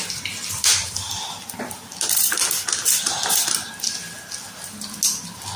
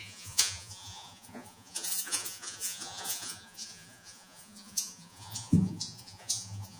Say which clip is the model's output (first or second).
second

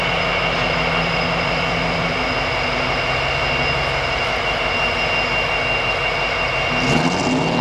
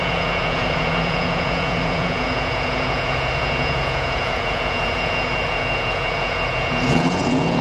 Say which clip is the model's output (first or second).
second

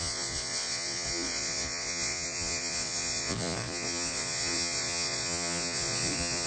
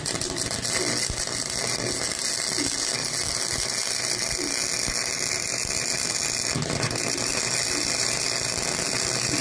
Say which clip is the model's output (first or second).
first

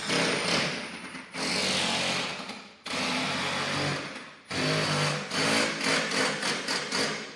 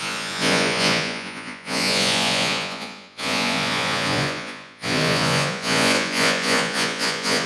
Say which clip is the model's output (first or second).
second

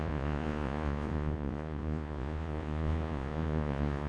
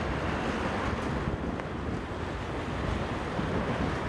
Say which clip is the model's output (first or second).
first